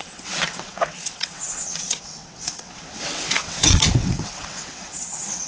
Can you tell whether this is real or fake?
fake